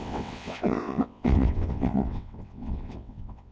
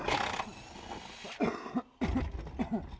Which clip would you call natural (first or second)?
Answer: second